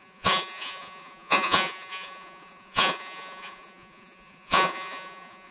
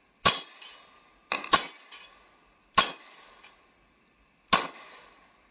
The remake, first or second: first